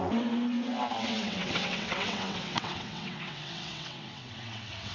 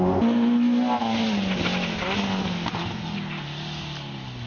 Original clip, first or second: second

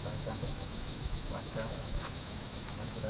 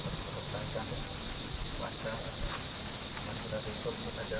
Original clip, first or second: second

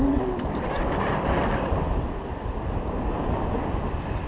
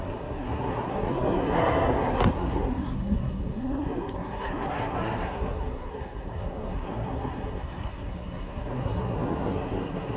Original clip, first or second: first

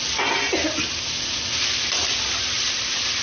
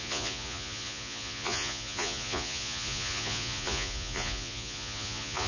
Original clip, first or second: first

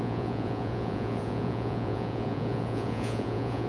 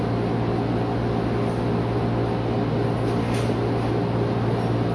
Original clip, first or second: second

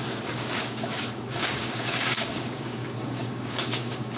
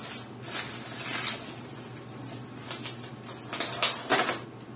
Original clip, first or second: second